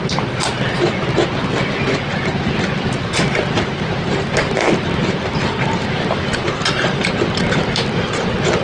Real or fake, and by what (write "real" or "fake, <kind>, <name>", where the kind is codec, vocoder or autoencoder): real